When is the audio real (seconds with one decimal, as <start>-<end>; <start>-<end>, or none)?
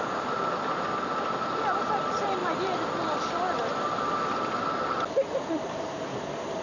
0.0-6.6